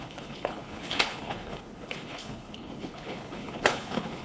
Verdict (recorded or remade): remade